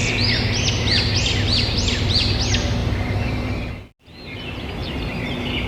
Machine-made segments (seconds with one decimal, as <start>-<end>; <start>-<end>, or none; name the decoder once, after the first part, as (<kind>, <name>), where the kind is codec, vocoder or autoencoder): 2.8-3.7 (vocoder, BigVGAN v2)